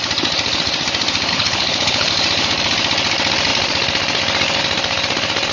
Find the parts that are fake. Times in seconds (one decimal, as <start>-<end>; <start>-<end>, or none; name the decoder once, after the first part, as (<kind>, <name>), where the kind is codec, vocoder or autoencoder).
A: 1.3-2.1 (codec, HILCodec)